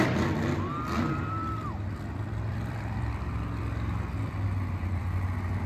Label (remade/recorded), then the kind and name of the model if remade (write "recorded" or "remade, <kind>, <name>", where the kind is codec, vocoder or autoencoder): remade, vocoder, BigVGAN v2